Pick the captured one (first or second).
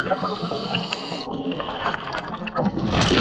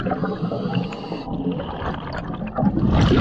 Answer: second